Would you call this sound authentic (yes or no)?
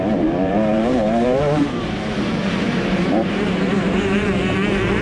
no